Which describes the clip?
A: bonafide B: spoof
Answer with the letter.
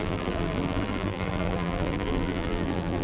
B